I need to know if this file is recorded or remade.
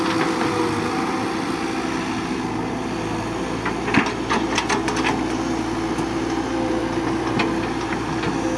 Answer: recorded